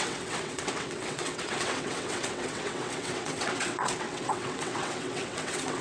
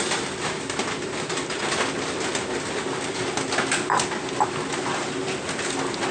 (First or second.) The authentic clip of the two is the second